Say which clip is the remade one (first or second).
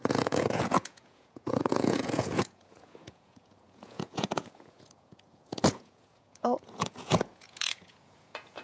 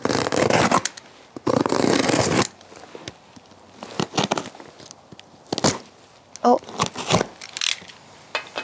first